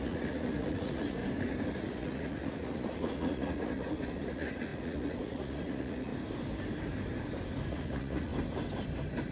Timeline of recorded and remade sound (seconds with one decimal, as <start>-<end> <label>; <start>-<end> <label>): 0.0-1.2 remade; 1.2-1.7 recorded; 1.7-6.1 remade; 6.1-7.7 recorded; 7.7-8.3 remade; 8.3-9.3 recorded